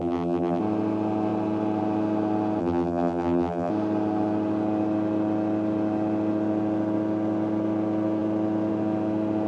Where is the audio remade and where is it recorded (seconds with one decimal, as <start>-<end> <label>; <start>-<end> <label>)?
0.0-0.6 remade; 0.6-2.6 recorded; 2.6-3.7 remade; 3.7-9.5 recorded